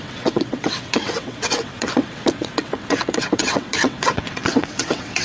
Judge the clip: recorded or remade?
remade